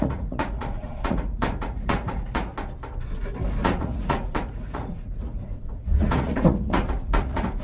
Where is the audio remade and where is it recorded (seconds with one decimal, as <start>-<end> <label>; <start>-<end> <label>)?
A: 0.0-2.5 remade; 2.5-3.6 recorded; 3.6-7.6 remade